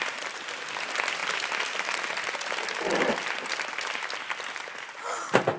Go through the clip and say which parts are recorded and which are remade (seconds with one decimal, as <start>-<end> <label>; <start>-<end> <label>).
0.0-5.6 recorded